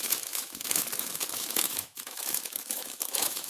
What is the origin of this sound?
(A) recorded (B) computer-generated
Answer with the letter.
B